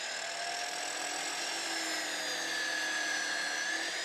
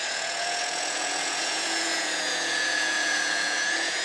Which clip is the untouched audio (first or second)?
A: first